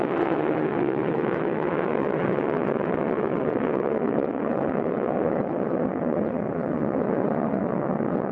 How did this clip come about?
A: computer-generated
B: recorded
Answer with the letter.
A